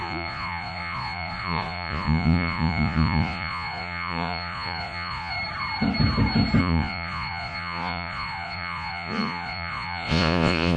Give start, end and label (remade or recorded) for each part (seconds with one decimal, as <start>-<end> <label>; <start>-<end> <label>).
0.0-5.3 remade; 5.3-6.6 recorded; 6.6-10.8 remade